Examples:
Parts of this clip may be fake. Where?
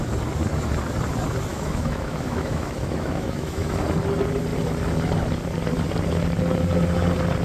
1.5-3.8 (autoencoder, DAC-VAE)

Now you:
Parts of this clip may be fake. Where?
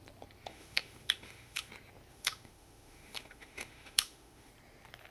0.5-1.7 (autoencoder, DAC-VAE); 2.1-4.5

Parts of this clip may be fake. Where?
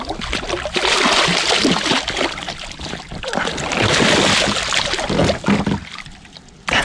none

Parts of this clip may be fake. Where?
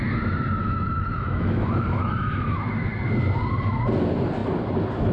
0.6-2.7 (autoencoder, DAC-VAE)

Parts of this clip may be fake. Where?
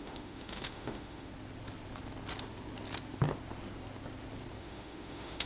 0.0-1.3 (autoencoder, DAC-VAE); 4.6-5.5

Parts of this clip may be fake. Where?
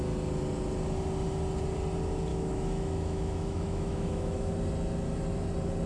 2.3-4.5 (autoencoder, DAC-VAE)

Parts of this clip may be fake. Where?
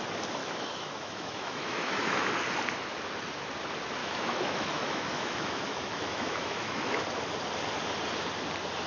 0.4-2.3 (autoencoder, DAC-VAE); 4.0-7.0